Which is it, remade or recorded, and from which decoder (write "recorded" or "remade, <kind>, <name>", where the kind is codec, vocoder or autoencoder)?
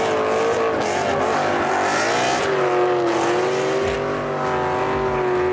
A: recorded